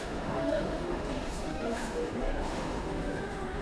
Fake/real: fake